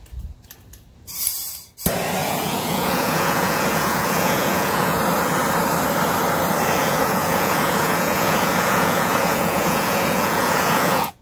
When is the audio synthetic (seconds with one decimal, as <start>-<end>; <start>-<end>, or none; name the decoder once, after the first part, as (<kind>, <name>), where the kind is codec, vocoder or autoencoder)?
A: 2.2-5.0 (vocoder, Vocos); 6.8-11.2